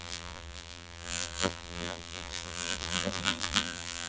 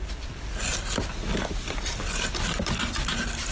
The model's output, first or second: first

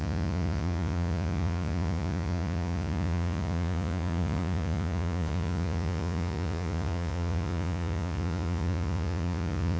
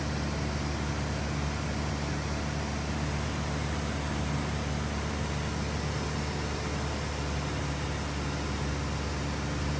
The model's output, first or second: first